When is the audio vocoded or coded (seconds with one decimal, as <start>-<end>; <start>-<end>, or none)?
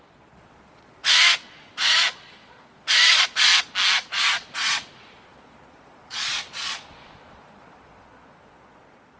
0.0-3.5; 4.1-9.2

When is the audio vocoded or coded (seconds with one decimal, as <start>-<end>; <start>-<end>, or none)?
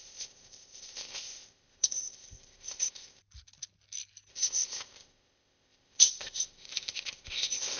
0.0-3.2; 4.3-7.8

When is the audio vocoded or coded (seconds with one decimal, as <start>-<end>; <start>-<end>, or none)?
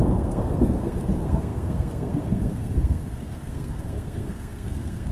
0.0-5.1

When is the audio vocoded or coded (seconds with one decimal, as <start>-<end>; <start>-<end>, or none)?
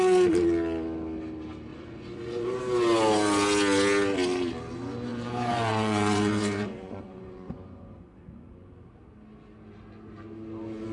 1.7-2.6; 5.1-8.7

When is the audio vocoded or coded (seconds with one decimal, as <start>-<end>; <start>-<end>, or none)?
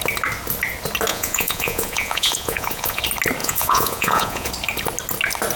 1.1-3.0; 3.4-4.5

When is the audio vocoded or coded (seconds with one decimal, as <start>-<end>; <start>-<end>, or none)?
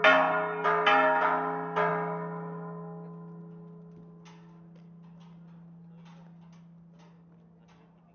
none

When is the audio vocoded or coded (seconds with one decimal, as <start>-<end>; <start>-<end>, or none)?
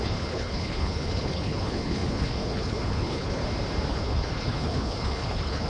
0.0-3.4; 3.9-5.7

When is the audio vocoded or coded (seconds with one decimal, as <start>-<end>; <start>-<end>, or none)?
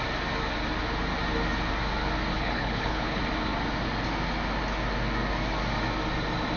2.3-3.2